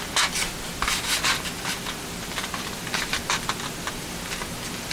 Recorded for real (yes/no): yes